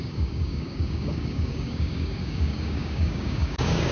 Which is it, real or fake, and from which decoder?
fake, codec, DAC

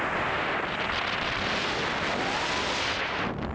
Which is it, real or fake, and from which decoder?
real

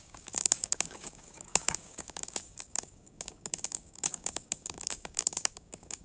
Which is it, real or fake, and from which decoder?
fake, codec, DAC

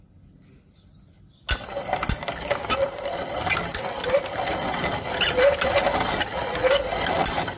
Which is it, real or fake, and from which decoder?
real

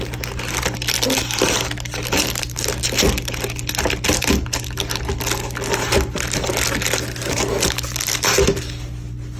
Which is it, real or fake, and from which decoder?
real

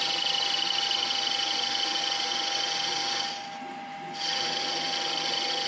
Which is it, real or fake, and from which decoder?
real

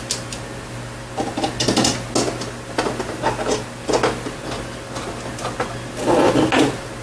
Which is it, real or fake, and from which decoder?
real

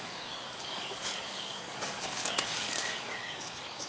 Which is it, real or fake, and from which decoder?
fake, codec, DAC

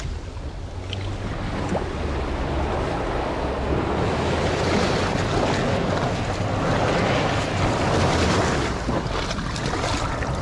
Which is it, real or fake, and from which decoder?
real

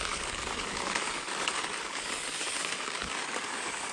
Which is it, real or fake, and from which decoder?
fake, codec, DAC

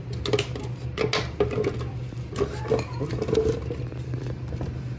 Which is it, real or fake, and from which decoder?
real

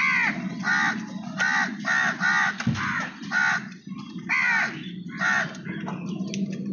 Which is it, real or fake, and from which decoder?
real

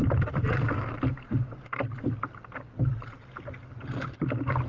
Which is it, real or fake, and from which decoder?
real